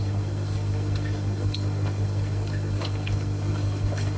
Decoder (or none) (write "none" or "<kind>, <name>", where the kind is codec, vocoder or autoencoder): codec, SNAC